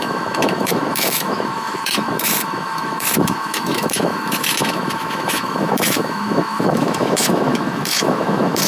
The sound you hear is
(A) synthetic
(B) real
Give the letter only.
A